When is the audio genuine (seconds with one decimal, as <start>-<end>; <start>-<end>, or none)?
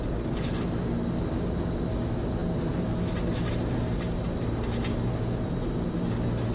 0.0-6.5